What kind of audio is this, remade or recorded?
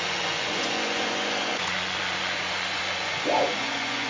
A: remade